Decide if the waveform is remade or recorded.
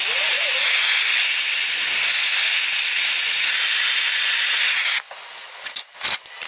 recorded